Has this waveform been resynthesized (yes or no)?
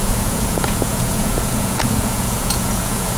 yes